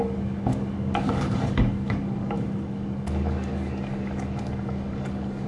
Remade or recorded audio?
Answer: remade